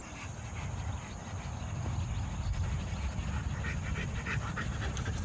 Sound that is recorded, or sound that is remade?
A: recorded